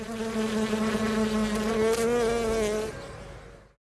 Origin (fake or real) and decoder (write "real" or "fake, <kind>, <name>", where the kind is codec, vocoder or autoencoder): real